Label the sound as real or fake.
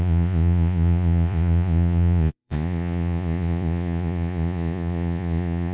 fake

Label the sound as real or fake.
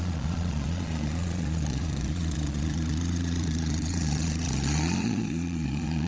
fake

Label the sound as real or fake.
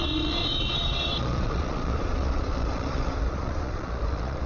fake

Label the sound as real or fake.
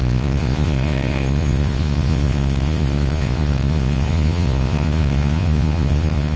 fake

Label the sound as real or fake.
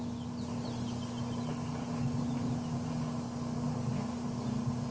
real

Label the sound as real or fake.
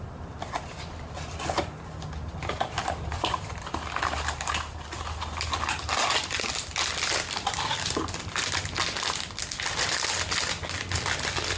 real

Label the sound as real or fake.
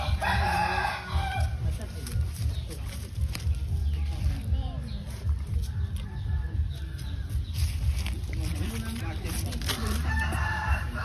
real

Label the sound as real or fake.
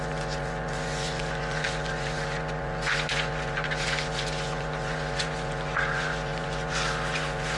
fake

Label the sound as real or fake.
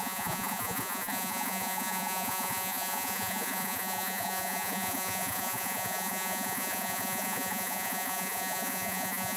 fake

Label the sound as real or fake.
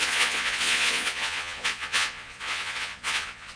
fake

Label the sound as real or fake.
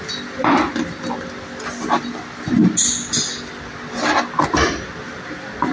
real